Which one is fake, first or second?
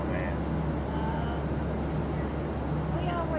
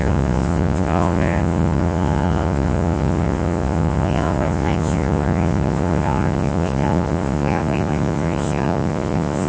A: second